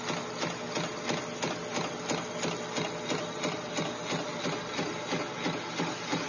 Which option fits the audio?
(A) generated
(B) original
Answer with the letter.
B